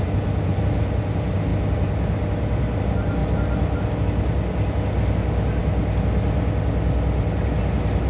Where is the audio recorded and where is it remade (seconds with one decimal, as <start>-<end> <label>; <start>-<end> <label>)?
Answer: 0.0-8.1 recorded